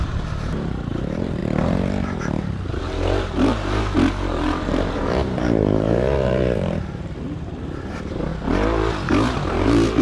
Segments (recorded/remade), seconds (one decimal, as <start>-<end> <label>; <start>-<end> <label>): 0.0-1.4 remade; 1.4-2.8 recorded; 2.8-8.3 remade; 8.3-9.5 recorded; 9.5-10.0 remade